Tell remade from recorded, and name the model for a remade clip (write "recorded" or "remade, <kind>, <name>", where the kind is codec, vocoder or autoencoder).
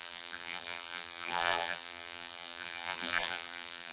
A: remade, vocoder, BigVGAN v2